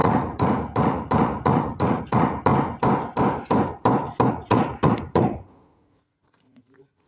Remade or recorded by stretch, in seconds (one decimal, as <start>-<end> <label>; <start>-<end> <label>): 0.0-2.5 remade; 2.5-4.3 recorded; 4.3-7.1 remade